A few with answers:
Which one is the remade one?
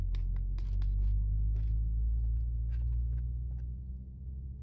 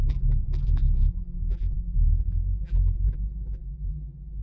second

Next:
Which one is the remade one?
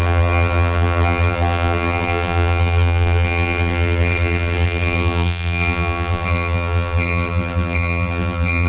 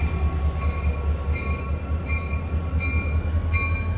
first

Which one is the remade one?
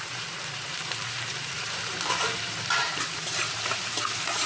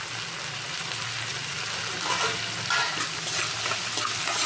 first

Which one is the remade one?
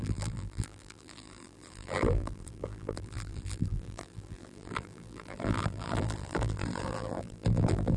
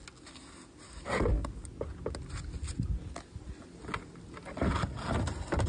first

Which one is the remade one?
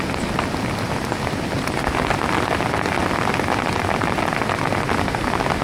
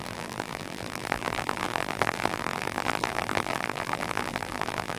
second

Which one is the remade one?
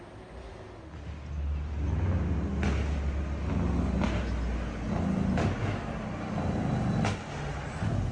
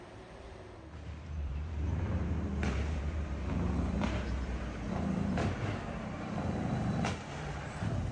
second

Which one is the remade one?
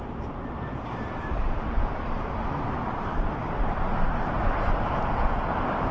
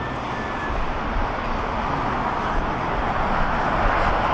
first